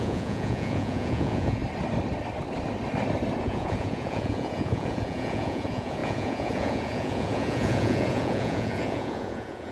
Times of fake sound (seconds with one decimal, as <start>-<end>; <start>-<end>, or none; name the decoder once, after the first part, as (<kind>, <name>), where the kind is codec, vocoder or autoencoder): 0.0-1.6 (vocoder, Vocos); 3.4-9.7